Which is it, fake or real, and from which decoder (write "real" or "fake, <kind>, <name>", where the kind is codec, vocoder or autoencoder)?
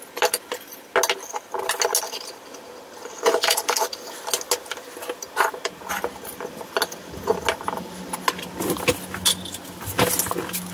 real